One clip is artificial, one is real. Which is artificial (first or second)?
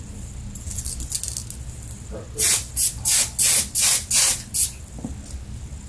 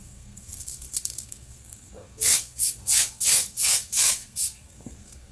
second